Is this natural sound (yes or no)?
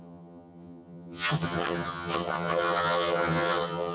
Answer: no